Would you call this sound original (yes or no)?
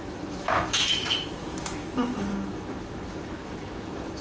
no